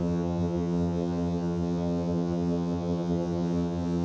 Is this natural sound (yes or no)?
no